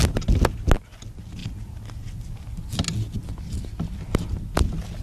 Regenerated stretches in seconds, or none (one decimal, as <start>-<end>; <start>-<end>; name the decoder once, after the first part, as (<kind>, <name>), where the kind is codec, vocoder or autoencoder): none